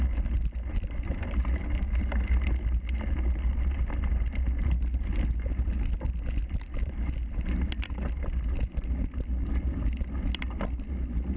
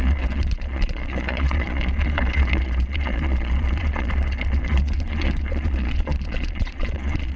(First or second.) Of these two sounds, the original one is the first